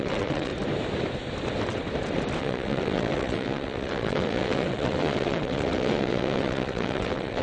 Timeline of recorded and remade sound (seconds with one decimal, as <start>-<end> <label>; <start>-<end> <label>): 0.0-0.5 remade; 0.5-2.4 recorded; 2.4-7.4 remade